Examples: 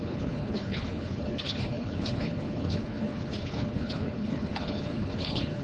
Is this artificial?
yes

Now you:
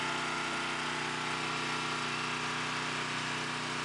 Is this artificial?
no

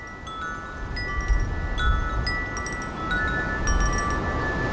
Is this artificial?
no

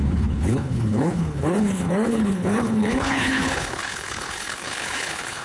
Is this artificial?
yes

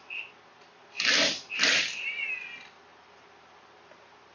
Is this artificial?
no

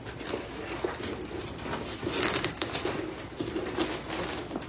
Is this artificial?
no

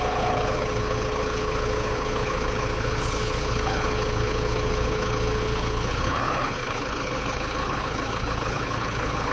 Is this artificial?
yes